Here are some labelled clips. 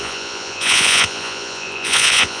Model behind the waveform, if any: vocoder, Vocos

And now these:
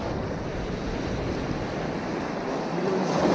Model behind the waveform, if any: none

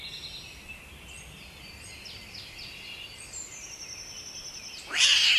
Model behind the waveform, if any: none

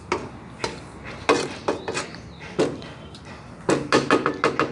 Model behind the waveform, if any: none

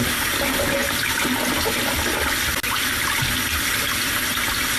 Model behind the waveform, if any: none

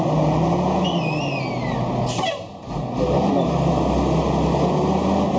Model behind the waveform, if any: none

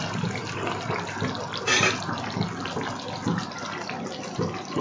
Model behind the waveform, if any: none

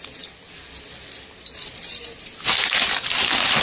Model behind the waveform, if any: none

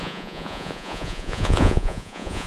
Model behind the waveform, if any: vocoder, Vocos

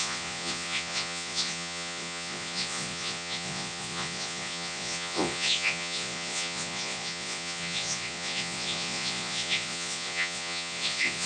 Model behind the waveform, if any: vocoder, Vocos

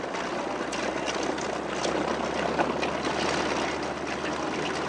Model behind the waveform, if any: none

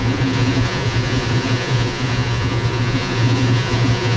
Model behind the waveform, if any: vocoder, Vocos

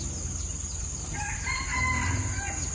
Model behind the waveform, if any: none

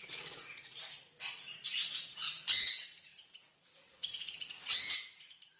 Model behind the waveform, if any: vocoder, Vocos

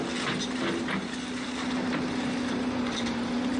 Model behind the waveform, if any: none